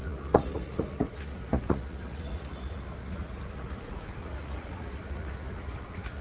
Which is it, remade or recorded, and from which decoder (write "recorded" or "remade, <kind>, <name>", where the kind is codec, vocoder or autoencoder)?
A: remade, vocoder, Vocos